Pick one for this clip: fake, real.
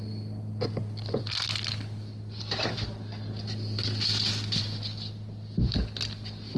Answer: real